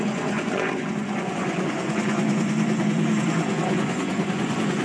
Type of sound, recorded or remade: remade